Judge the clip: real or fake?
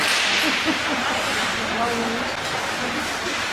real